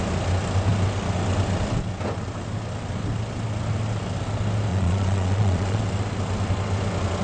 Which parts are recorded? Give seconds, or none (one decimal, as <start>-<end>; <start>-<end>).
0.0-4.7; 5.8-7.2